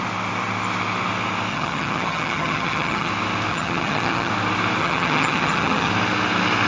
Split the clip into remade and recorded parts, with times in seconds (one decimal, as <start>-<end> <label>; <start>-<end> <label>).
0.0-1.5 recorded; 1.5-3.1 remade; 3.1-3.5 recorded; 3.5-4.3 remade; 4.3-4.8 recorded; 4.8-5.9 remade; 5.9-6.7 recorded